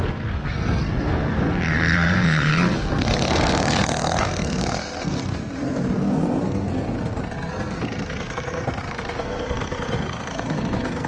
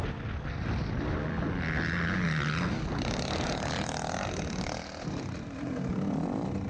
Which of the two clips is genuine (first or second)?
second